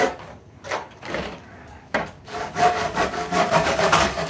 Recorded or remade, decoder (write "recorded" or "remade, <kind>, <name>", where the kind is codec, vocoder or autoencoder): remade, codec, DAC